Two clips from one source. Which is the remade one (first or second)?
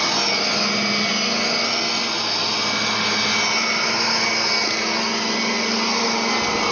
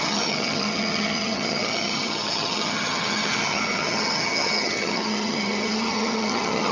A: second